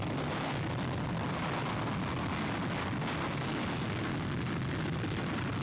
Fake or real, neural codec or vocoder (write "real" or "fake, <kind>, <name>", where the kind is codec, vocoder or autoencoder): real